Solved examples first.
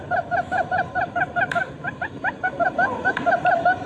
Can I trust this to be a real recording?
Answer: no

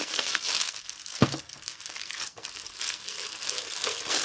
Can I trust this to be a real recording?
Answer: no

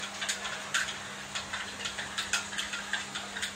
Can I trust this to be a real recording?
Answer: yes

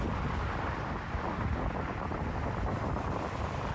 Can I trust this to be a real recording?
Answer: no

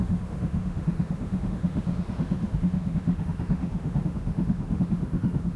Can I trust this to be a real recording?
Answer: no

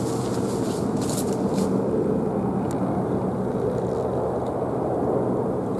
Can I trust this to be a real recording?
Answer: yes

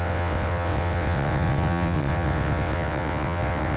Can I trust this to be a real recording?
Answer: no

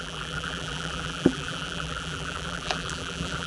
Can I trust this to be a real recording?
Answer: no